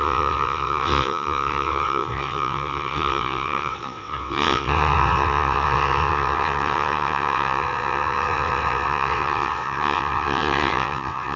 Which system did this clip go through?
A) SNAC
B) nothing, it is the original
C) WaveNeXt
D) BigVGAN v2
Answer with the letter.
C